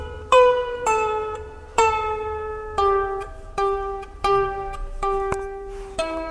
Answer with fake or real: fake